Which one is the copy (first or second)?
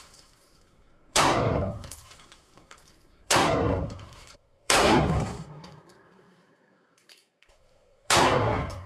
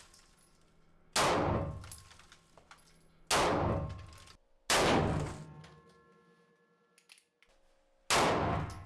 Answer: first